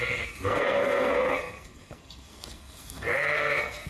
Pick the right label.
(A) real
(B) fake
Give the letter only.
B